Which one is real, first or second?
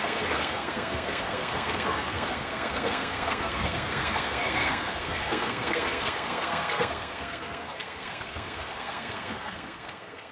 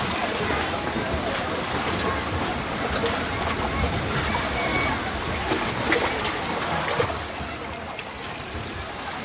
second